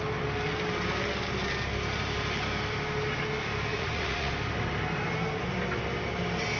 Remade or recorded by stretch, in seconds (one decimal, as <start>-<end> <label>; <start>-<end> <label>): 0.0-3.7 recorded; 3.7-4.3 remade; 4.3-6.6 recorded